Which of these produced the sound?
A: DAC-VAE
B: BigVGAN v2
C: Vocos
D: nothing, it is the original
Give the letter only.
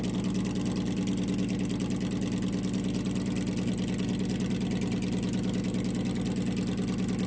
D